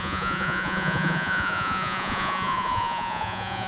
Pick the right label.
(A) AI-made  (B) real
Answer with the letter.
A